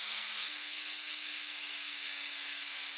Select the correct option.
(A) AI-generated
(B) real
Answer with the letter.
A